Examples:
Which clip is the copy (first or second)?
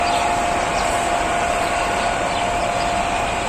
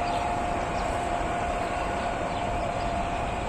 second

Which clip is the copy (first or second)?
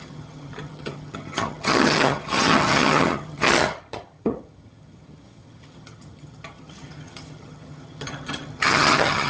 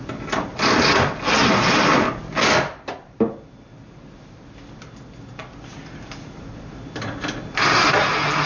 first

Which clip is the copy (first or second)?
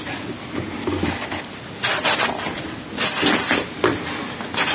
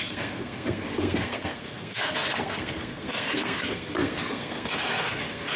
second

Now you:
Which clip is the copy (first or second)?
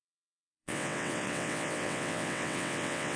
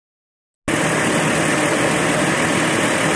first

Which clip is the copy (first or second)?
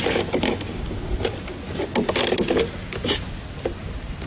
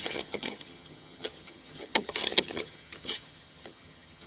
second